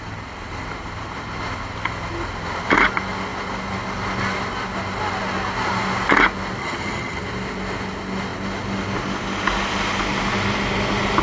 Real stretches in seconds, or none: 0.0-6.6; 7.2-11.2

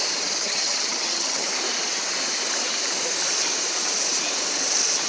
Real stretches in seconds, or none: 0.0-0.4; 1.5-5.1

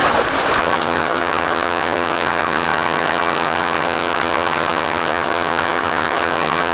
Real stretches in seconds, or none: 0.0-0.6

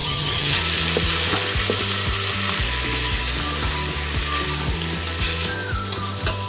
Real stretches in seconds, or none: 0.6-6.5

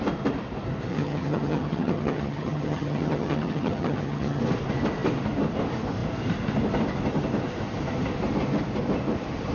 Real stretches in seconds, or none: 0.0-0.9; 4.4-9.5

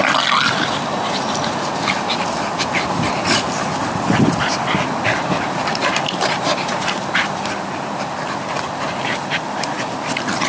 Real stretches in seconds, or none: 0.0-10.5

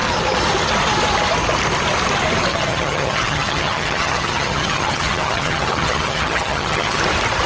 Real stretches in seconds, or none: 0.0-2.5; 7.0-7.5